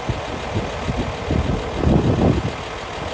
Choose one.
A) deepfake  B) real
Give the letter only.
B